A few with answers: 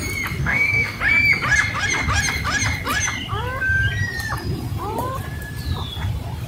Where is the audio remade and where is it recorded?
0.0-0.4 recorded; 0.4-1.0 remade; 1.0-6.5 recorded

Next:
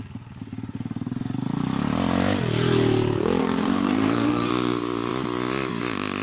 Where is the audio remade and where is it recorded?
0.0-3.4 recorded; 3.4-4.5 remade; 4.5-6.2 recorded